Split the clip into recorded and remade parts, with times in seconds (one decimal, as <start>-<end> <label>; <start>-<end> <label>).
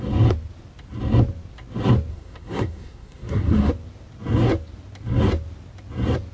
0.0-2.1 recorded; 2.1-3.7 remade; 3.7-6.3 recorded